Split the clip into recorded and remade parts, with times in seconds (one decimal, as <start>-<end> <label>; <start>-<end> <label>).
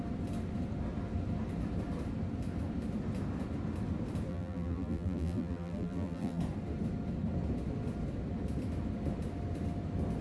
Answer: 0.0-4.3 recorded; 4.3-6.4 remade; 6.4-10.2 recorded